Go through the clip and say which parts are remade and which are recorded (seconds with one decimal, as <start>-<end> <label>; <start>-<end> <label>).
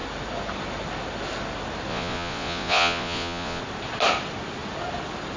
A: 0.0-1.9 recorded; 1.9-3.6 remade; 3.6-5.4 recorded